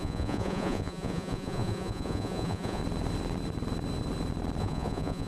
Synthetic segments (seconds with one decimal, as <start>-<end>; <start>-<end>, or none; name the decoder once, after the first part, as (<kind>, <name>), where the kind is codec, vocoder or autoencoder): 0.0-2.8 (vocoder, Vocos); 4.6-5.3